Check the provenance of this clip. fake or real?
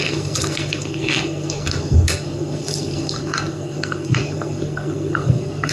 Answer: fake